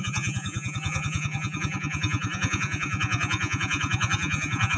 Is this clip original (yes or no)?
no